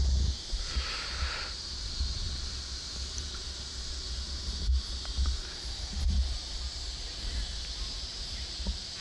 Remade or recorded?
recorded